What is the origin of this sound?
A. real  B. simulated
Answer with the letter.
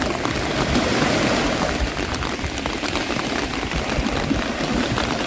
B